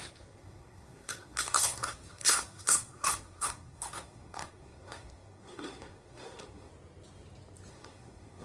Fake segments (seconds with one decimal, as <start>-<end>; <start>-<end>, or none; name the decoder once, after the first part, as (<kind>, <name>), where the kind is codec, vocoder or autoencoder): 0.0-6.7 (codec, SNAC); 7.7-8.4